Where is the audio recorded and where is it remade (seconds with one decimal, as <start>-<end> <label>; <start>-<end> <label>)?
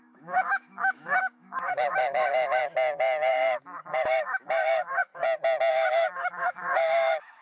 0.0-2.6 remade; 2.6-3.3 recorded; 3.3-5.1 remade; 5.1-5.7 recorded; 5.7-7.4 remade